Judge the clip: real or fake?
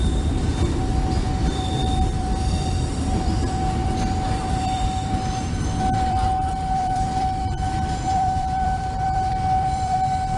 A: fake